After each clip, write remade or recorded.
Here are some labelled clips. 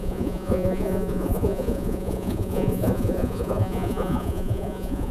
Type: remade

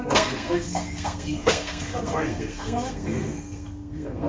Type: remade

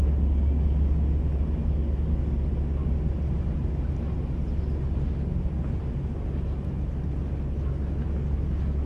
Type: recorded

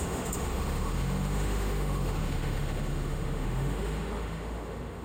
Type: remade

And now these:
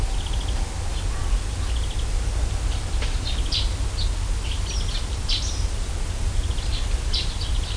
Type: recorded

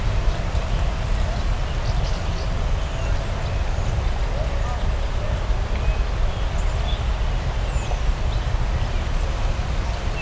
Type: recorded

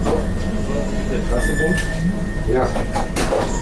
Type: recorded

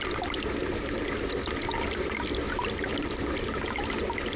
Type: recorded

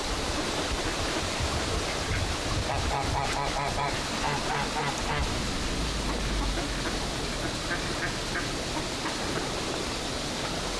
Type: recorded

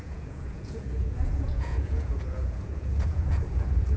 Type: remade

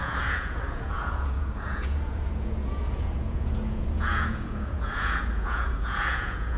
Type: remade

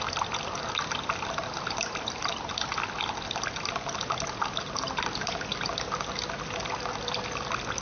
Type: recorded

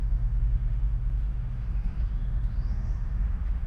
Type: remade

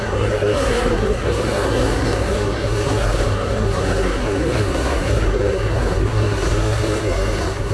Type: remade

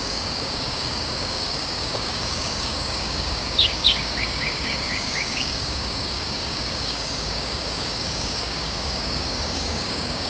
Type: remade